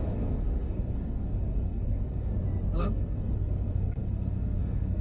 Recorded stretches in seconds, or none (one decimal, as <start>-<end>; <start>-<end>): 2.3-2.8